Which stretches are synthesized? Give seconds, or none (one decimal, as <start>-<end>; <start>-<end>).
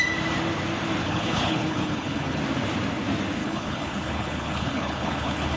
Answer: 1.0-2.4; 3.4-5.6